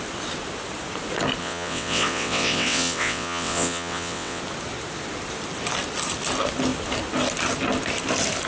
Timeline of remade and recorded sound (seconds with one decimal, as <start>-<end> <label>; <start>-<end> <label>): 0.0-1.4 recorded; 1.4-4.4 remade; 4.4-8.5 recorded

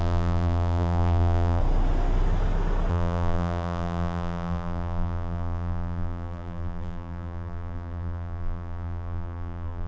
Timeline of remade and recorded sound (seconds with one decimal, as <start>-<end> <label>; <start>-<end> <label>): 0.0-1.6 remade; 1.6-2.9 recorded; 2.9-9.9 remade